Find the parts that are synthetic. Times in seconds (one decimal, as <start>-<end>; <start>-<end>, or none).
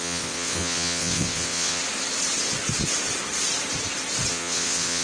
0.0-1.8; 4.3-5.0